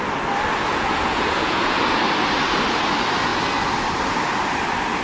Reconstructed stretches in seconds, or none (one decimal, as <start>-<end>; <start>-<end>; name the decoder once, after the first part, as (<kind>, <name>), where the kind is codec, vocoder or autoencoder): 0.7-2.0 (vocoder, Vocos)